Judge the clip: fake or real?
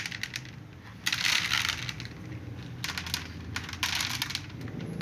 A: real